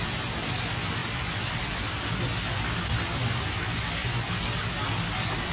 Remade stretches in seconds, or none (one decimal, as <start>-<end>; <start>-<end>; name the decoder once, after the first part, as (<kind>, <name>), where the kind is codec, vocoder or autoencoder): 1.0-2.1 (vocoder, BigVGAN v2)